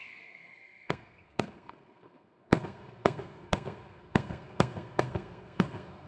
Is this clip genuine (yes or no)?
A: no